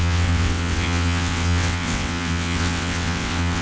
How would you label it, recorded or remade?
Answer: remade